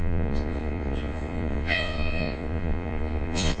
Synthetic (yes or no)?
yes